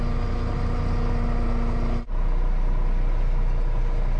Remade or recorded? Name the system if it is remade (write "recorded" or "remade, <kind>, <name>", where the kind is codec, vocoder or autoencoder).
recorded